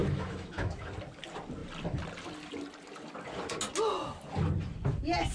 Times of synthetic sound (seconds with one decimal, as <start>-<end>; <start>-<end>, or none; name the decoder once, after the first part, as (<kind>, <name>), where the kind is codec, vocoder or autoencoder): 0.0-0.8 (autoencoder, DAC-VAE)